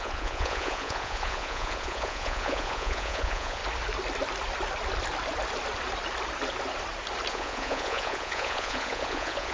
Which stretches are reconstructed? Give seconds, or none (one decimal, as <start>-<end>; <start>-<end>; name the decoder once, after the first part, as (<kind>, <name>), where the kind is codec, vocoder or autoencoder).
0.0-3.6 (vocoder, Vocos); 7.3-9.5